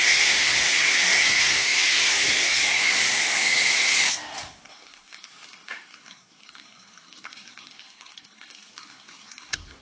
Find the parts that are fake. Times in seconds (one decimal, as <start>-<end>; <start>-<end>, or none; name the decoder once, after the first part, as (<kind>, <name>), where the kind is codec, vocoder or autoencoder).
0.0-9.8 (codec, SNAC)